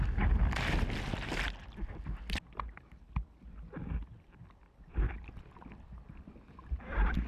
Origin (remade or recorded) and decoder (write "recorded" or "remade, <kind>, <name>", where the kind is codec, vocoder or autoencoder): recorded